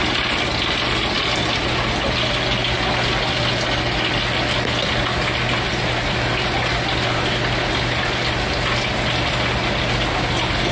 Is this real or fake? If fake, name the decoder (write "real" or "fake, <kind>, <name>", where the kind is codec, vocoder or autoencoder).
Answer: real